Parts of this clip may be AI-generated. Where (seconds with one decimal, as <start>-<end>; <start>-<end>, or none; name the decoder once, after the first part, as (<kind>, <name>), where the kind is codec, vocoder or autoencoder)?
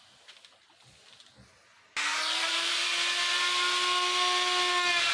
2.1-2.9 (vocoder, BigVGAN v2)